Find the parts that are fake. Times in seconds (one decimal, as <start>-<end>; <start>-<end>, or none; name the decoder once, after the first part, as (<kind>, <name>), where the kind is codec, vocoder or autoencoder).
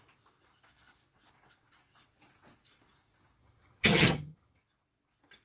3.4-4.6 (vocoder, HiFi-GAN)